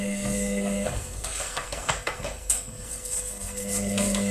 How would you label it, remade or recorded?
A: remade